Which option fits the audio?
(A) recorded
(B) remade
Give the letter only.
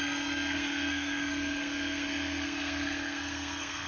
B